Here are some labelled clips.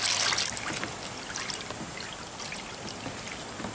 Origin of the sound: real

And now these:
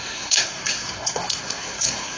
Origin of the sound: fake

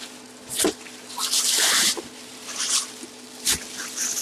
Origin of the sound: fake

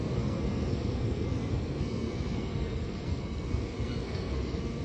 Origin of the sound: fake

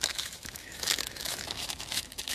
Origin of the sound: fake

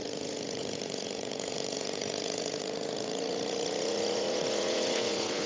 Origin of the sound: fake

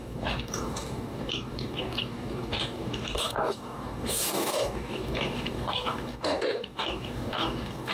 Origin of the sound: fake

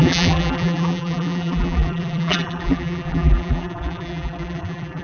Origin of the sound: fake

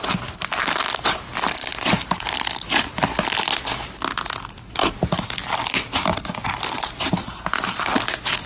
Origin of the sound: real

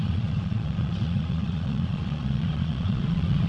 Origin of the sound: fake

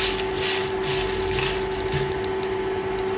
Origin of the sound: real